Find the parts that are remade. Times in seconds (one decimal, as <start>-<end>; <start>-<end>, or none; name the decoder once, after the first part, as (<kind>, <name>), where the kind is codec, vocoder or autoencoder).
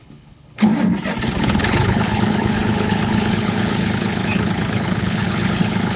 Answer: 0.0-0.7 (codec, HILCodec); 1.4-6.0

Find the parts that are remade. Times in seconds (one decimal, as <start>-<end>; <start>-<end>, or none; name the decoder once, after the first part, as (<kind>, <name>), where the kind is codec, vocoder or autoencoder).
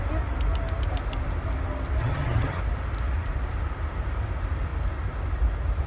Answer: 2.0-2.6 (vocoder, HiFi-GAN)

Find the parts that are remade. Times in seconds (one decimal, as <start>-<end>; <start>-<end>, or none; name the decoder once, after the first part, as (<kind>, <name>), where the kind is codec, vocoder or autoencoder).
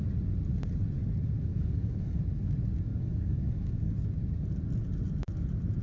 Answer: 1.5-2.2 (codec, DAC); 2.9-4.0